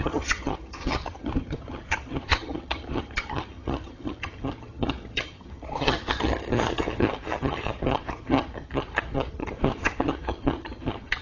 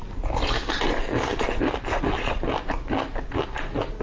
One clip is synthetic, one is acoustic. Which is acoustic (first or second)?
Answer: second